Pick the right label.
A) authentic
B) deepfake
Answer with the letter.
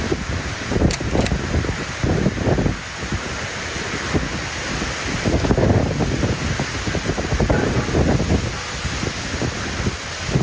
A